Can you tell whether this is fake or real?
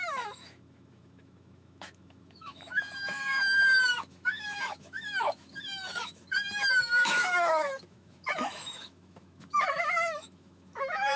fake